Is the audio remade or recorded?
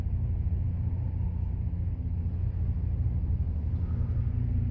recorded